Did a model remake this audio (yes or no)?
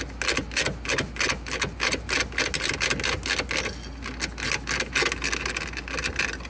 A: no